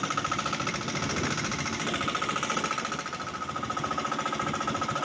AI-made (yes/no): no